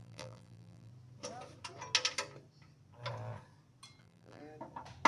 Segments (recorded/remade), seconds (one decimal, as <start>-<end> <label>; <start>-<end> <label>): 0.0-0.9 remade; 0.9-4.0 recorded; 4.0-4.4 remade; 4.4-5.1 recorded